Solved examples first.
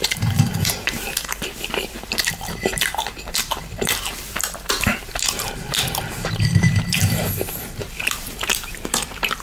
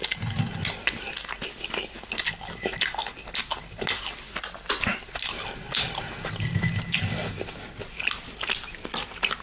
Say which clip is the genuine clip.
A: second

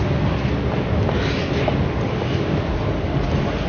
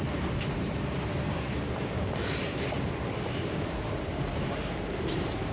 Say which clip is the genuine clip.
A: first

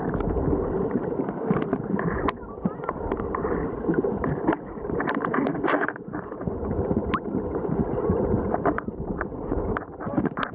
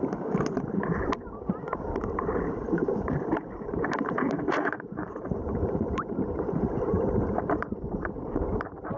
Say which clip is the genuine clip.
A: first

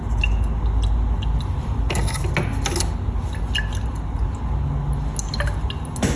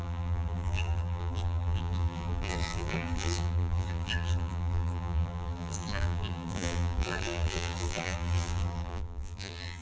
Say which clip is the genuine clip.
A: first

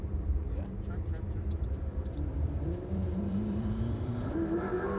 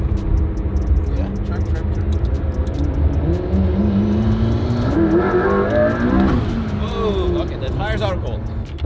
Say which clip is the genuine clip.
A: second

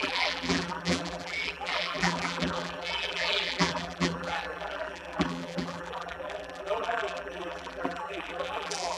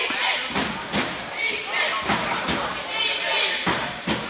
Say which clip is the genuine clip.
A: second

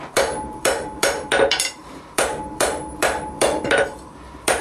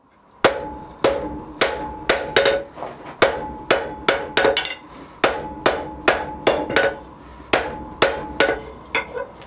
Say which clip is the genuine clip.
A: second